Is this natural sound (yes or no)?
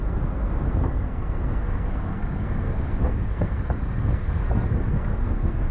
no